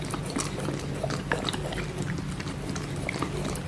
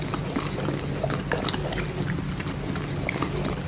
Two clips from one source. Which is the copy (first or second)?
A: first